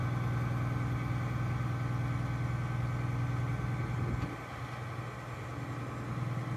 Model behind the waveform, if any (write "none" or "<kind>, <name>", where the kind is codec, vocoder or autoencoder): none